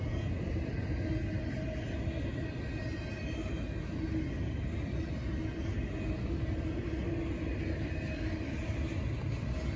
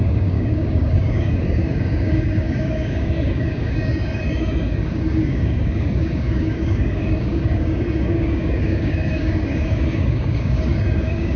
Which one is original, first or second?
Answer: first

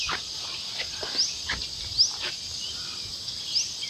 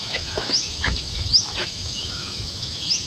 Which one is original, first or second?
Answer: first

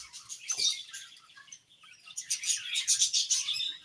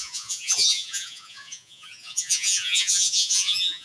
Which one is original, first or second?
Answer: first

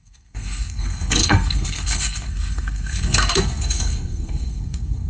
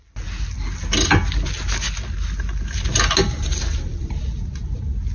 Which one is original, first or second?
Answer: second